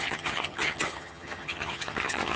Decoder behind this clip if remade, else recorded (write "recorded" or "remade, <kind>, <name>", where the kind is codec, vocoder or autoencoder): remade, vocoder, HiFi-GAN